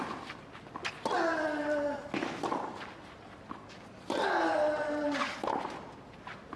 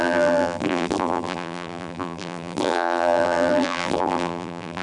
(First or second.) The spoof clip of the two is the second